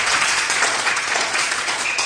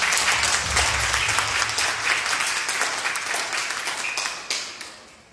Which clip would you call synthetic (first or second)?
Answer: first